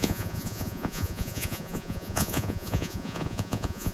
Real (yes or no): no